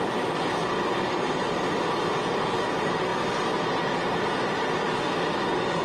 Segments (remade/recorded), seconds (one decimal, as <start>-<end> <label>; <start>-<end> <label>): 0.0-3.1 recorded; 3.1-3.7 remade; 3.7-5.8 recorded